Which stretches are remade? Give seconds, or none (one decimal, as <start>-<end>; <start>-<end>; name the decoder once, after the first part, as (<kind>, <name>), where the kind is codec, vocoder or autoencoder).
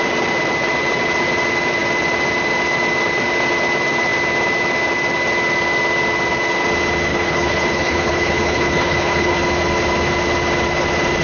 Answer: 7.1-9.4 (codec, HILCodec)